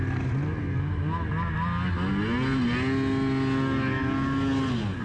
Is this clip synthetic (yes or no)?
no